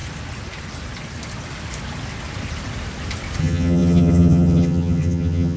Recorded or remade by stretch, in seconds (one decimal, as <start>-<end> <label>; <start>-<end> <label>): 0.0-3.4 recorded; 3.4-5.6 remade

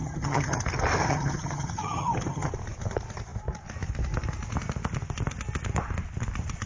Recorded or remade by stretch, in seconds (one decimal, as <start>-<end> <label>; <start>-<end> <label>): 0.0-0.6 remade; 0.6-1.0 recorded; 1.0-2.5 remade; 2.5-6.7 recorded

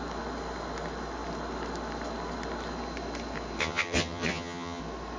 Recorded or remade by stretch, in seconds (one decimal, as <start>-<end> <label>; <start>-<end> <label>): 0.0-3.6 recorded; 3.6-4.8 remade; 4.8-5.2 recorded

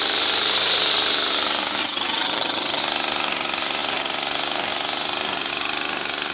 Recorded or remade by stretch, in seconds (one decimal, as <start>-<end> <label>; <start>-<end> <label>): 0.0-1.8 recorded; 1.8-2.8 remade; 2.8-6.3 recorded

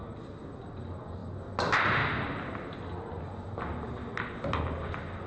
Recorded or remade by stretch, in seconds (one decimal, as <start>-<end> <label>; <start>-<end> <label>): 0.0-5.3 recorded

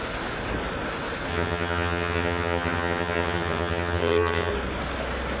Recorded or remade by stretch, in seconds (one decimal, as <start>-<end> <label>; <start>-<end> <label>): 0.0-1.3 recorded; 1.3-4.5 remade; 4.5-5.4 recorded

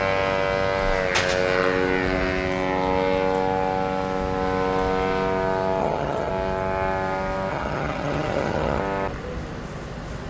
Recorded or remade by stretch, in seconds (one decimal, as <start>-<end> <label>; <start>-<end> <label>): 0.0-5.8 recorded; 5.8-6.3 remade; 6.3-7.5 recorded; 7.5-8.8 remade; 8.8-10.3 recorded